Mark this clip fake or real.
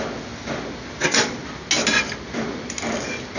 real